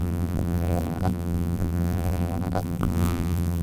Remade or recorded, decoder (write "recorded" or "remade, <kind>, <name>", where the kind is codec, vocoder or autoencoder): remade, vocoder, BigVGAN v2